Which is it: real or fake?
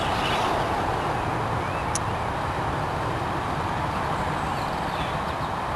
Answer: real